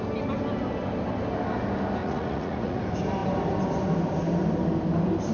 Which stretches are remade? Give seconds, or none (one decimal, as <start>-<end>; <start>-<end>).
2.0-2.8